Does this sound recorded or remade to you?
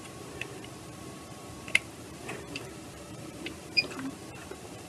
remade